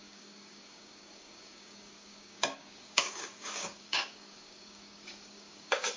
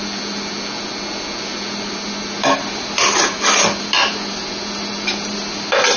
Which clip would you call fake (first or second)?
first